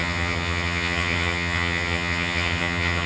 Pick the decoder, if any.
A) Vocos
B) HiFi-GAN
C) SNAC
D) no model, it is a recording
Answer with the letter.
B